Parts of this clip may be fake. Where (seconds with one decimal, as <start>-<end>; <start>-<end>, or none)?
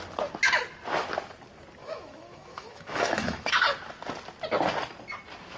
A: 1.8-3.5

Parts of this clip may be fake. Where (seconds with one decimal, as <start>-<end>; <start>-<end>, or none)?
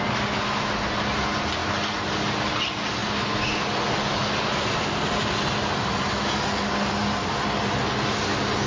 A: none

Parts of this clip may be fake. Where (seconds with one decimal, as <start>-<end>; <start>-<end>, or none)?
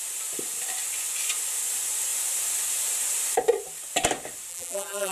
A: 4.5-5.1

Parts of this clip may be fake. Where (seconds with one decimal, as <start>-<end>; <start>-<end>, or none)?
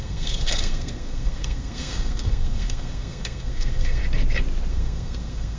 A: 0.0-4.0; 4.7-5.6